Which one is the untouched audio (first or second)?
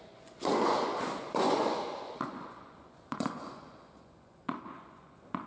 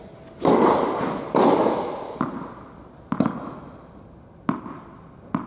second